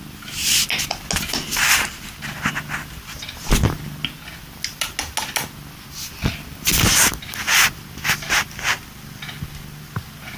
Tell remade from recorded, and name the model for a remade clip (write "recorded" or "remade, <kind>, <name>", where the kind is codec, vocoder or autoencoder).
recorded